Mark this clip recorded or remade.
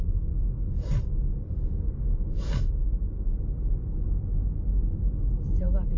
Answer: recorded